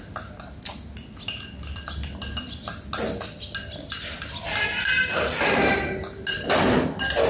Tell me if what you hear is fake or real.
real